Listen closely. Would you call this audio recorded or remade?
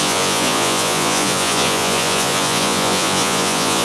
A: remade